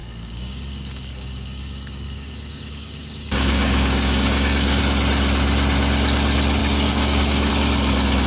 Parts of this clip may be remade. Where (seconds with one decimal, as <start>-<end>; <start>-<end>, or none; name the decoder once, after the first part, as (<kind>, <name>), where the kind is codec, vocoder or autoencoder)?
0.0-4.8 (codec, DAC); 6.6-7.5